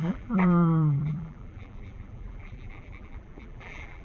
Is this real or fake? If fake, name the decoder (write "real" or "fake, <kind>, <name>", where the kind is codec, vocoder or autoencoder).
fake, vocoder, BigVGAN v2